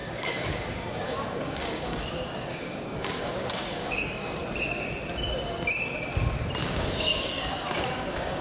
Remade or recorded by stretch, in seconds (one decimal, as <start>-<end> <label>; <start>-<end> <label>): 0.0-4.4 remade; 4.4-6.6 recorded; 6.6-8.4 remade